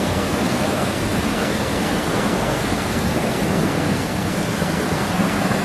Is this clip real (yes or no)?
no